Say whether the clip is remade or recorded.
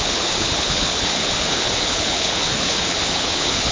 remade